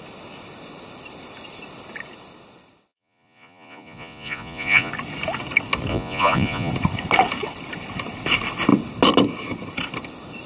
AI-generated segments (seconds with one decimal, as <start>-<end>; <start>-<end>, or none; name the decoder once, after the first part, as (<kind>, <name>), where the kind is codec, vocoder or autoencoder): 2.9-4.9 (vocoder, Vocos); 5.9-6.7